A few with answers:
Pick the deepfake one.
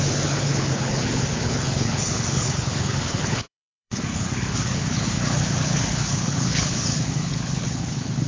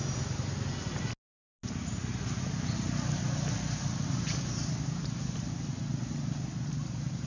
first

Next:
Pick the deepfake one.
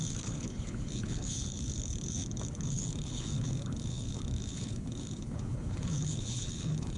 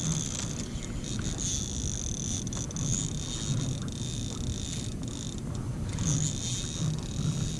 first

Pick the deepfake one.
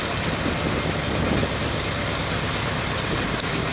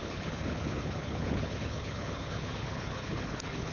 second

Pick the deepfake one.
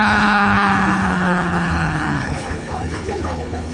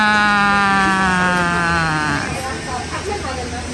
first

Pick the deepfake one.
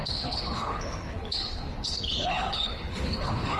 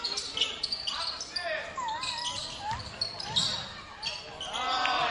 first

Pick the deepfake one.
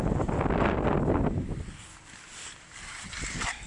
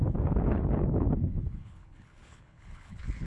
second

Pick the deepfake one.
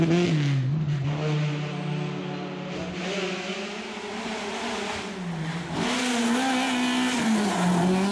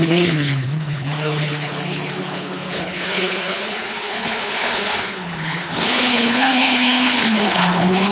second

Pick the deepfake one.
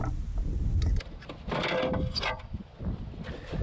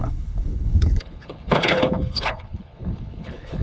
second